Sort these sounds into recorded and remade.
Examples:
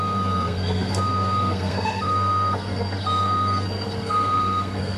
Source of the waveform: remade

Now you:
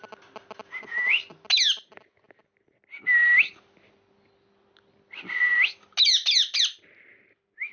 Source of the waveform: recorded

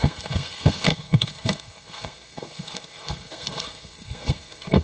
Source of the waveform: remade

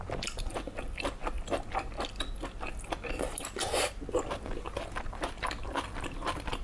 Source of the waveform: recorded